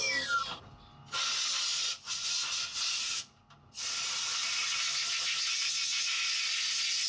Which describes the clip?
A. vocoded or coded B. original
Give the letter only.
B